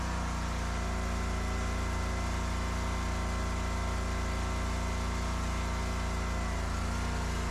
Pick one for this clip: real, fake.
real